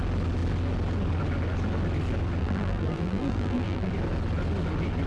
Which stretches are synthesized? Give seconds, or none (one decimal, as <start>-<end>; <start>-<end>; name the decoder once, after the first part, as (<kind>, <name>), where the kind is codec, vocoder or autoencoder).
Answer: 2.4-3.9 (vocoder, BigVGAN v2)